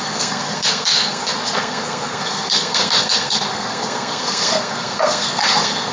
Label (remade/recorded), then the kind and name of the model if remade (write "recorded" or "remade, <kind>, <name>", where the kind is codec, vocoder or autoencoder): remade, codec, SNAC